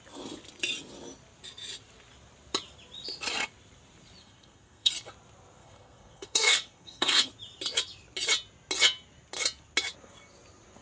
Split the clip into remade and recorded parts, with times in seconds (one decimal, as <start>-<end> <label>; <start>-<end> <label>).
0.0-4.2 recorded; 4.2-4.9 remade; 4.9-5.6 recorded; 5.6-7.3 remade; 7.3-10.8 recorded